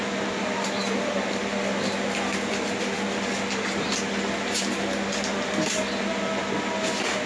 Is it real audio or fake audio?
real